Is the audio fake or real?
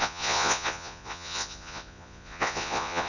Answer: fake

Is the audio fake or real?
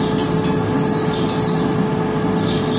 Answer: real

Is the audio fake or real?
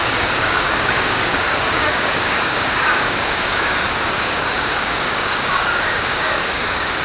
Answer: fake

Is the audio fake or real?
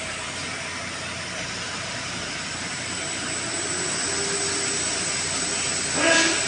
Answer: real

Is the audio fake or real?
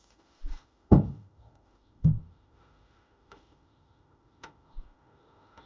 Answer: fake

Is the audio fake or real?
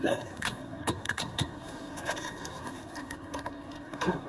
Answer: fake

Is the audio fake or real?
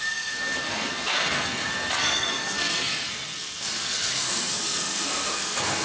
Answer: fake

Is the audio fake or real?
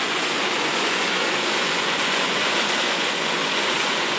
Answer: fake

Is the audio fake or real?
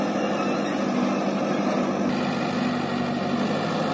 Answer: real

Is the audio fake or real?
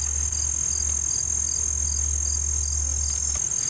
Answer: real